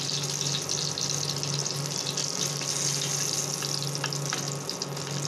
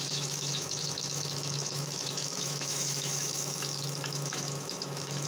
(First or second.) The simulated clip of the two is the second